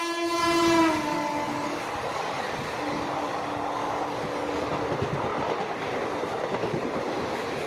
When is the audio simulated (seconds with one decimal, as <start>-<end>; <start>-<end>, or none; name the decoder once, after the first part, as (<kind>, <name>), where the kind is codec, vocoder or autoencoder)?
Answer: 1.1-2.5 (codec, DAC); 3.8-4.6